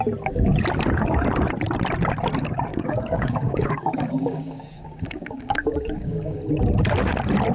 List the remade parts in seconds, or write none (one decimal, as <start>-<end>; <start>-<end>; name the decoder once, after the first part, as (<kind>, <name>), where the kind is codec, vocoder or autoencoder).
2.7-6.4 (codec, DAC)